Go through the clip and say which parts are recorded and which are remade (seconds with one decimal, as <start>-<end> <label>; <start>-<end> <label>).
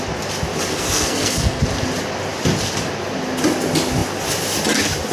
0.0-0.7 recorded; 0.7-1.6 remade; 1.6-5.1 recorded